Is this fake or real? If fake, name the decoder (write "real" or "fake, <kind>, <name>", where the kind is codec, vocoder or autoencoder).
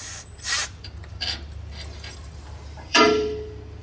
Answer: fake, vocoder, BigVGAN v2